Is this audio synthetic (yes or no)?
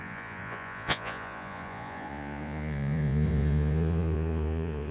yes